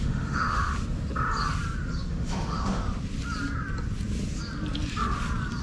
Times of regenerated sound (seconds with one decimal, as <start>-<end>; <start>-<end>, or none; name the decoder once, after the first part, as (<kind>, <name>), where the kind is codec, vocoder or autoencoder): 0.0-0.7 (autoencoder, DAC-VAE); 2.1-2.8